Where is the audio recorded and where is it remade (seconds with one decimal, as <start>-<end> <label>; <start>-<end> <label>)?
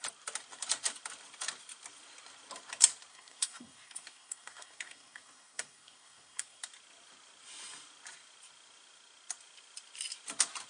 0.0-3.1 recorded; 3.1-6.6 remade; 6.6-10.7 recorded